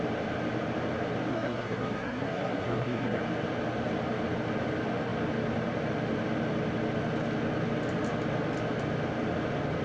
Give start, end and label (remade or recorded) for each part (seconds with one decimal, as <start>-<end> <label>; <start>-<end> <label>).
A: 0.0-1.3 recorded; 1.3-3.2 remade; 3.2-9.8 recorded